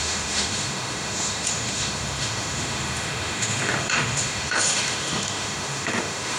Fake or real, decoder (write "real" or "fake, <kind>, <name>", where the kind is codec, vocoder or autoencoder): fake, autoencoder, DAC-VAE